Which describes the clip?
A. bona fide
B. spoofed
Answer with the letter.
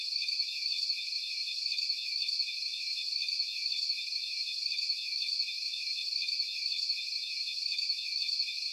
B